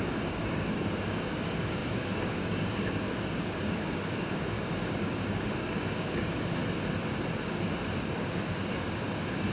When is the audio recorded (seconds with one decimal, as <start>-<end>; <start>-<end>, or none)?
6.6-8.0